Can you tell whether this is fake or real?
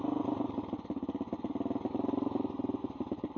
real